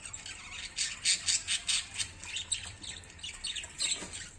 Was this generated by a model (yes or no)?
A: no